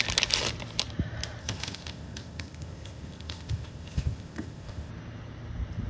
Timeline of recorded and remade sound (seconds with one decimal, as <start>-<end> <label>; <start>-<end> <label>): 0.0-1.4 recorded; 1.4-4.9 remade; 4.9-5.9 recorded